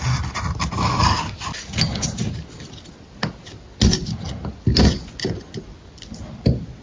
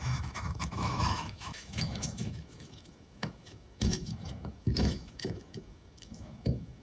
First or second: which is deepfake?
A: second